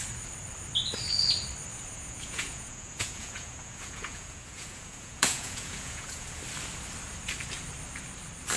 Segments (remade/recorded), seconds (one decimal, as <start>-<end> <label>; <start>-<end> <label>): 0.0-1.7 recorded; 1.7-6.4 remade; 6.4-8.6 recorded